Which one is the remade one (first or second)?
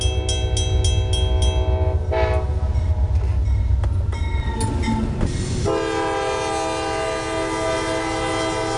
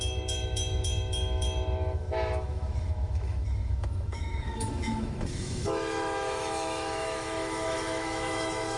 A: second